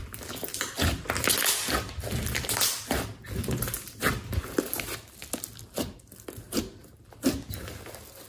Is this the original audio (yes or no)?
yes